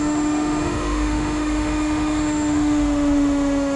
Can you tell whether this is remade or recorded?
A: remade